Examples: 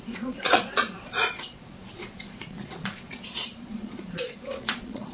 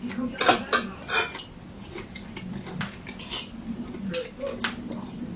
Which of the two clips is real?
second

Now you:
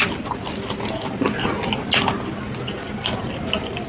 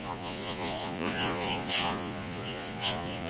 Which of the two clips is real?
first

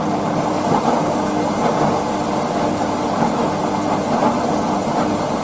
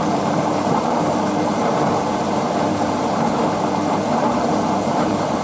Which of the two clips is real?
first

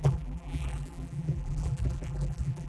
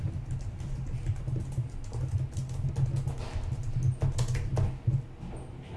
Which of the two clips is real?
second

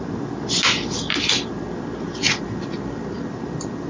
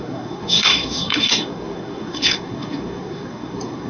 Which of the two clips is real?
first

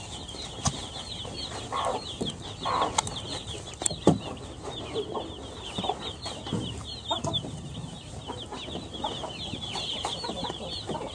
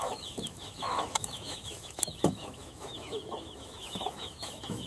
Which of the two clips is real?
first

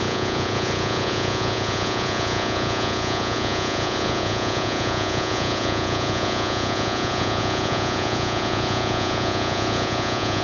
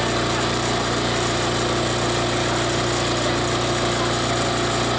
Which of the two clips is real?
second